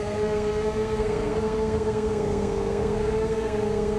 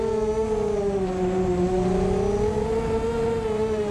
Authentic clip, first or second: second